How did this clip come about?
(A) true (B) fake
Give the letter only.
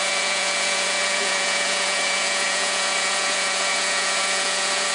B